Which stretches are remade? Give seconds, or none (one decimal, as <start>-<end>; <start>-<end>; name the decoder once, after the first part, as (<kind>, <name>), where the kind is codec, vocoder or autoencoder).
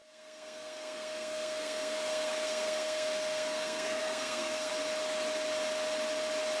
0.0-4.7 (codec, SNAC)